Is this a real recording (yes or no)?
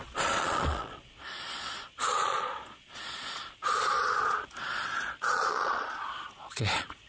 no